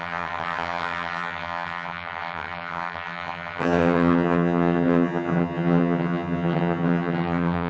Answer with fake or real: fake